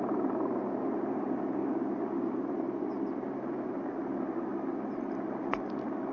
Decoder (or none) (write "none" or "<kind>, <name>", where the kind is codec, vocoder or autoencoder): none